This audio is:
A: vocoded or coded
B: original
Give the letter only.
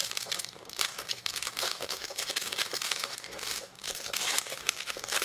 A